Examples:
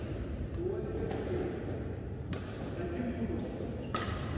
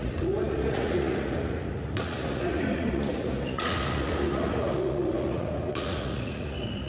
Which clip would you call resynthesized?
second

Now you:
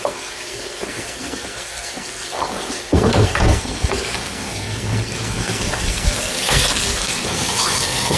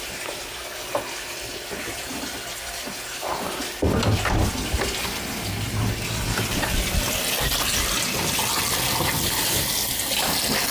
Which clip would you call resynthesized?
first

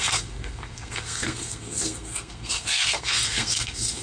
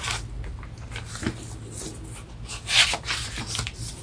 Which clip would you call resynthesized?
first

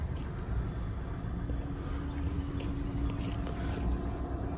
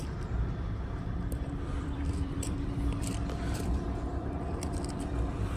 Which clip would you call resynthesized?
second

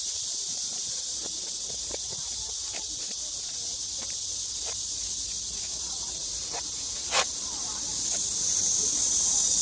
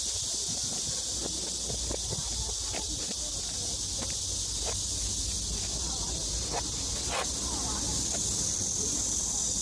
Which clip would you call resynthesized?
first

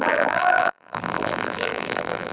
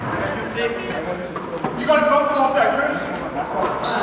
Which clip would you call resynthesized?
first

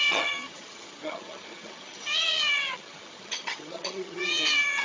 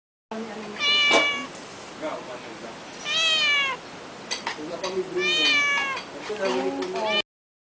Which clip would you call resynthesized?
first